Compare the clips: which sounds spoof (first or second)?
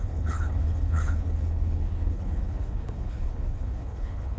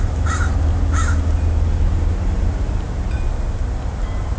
first